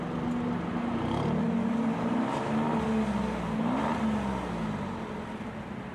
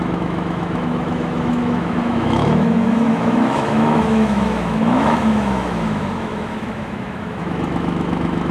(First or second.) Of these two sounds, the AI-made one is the second